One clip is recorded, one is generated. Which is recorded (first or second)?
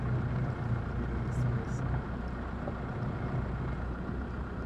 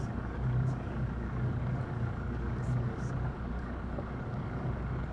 first